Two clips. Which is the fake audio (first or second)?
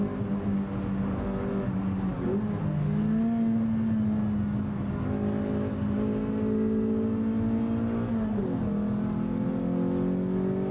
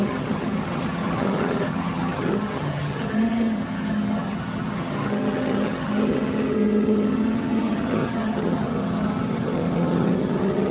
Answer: second